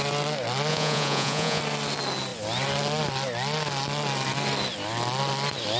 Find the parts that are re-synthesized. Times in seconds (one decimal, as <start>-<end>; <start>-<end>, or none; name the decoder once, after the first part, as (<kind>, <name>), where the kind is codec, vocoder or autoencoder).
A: 0.7-1.6 (vocoder, Vocos)